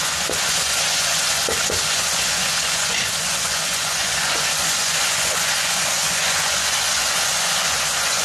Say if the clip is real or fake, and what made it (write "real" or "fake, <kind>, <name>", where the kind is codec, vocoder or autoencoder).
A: fake, vocoder, Vocos